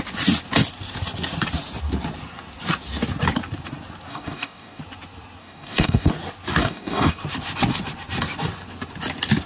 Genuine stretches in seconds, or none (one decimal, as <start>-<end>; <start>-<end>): 0.0-4.1; 4.8-5.4; 6.1-6.6; 7.2-9.5